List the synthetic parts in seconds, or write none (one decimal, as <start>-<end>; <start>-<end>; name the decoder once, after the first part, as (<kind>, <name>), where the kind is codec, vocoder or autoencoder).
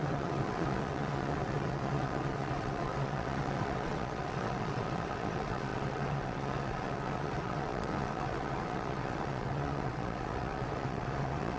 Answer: 0.0-11.6 (vocoder, WaveNeXt)